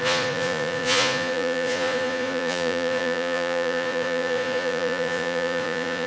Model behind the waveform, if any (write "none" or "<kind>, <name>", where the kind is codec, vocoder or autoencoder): vocoder, Vocos